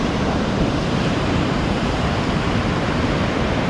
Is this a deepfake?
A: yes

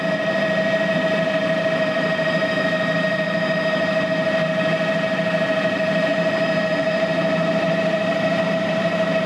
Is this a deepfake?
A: yes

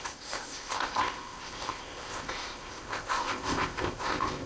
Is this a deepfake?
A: yes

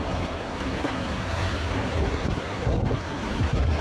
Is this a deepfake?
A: yes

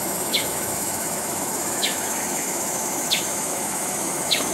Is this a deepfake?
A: yes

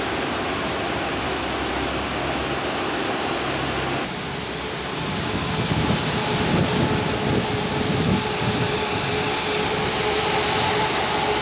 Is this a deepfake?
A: no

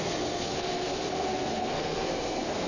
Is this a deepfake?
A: yes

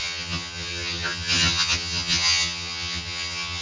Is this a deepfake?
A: yes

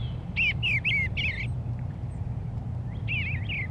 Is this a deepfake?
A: no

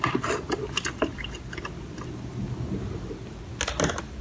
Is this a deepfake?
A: no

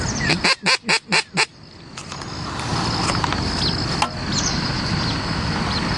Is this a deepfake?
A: no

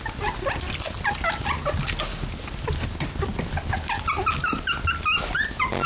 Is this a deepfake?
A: no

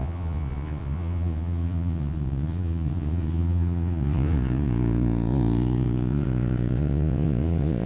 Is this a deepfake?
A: yes